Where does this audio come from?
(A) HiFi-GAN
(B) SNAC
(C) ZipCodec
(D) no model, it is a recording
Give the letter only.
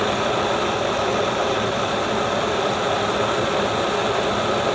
D